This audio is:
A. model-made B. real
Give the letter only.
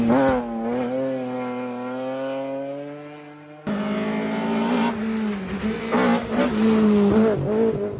B